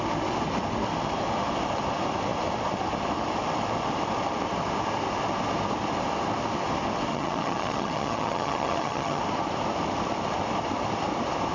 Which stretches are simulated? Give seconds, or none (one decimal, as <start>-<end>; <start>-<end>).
7.1-9.2